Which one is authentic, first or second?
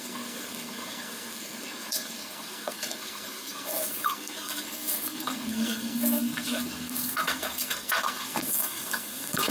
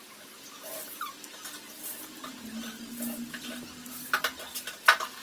second